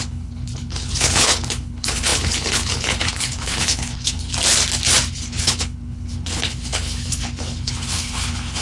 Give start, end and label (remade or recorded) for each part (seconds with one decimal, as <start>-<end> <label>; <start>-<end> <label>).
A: 0.0-4.3 remade; 4.3-5.1 recorded; 5.1-8.6 remade